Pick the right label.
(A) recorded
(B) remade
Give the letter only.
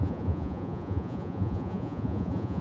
B